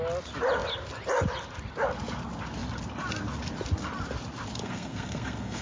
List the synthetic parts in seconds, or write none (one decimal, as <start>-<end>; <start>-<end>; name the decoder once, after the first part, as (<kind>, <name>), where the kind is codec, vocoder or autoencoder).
4.6-5.6 (codec, SNAC)